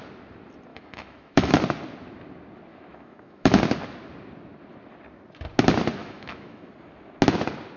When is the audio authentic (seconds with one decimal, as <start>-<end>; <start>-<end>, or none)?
0.0-0.7; 1.6-2.7; 3.6-6.0; 6.7-7.8